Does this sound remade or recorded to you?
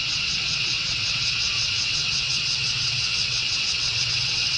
remade